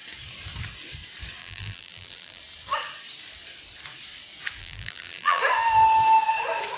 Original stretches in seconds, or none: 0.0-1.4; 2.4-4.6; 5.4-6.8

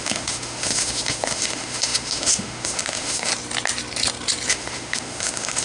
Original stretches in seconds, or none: 3.3-4.5